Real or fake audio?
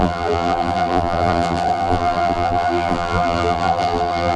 fake